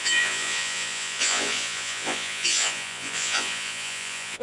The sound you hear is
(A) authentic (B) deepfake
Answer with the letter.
B